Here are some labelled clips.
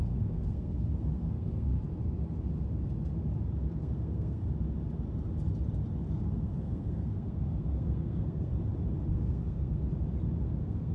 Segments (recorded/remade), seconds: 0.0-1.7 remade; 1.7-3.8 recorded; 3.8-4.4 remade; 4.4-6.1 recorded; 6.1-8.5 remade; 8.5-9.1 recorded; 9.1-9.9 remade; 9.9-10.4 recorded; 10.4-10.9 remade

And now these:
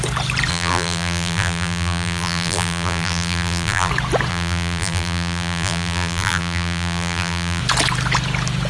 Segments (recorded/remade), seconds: 0.0-0.5 recorded; 0.5-3.9 remade; 3.9-4.3 recorded; 4.3-7.6 remade; 7.6-8.7 recorded

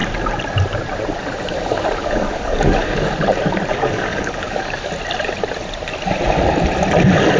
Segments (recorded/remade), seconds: 0.0-2.0 recorded; 2.0-3.1 remade; 3.1-3.7 recorded; 3.7-4.9 remade; 4.9-7.4 recorded

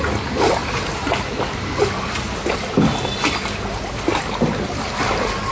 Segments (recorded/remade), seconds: 0.0-5.5 recorded

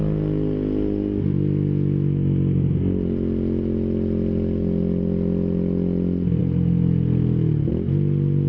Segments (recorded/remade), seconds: 0.0-8.5 recorded

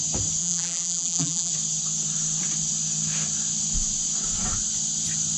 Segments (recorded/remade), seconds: 0.0-0.4 recorded; 0.4-1.5 remade; 1.5-5.4 recorded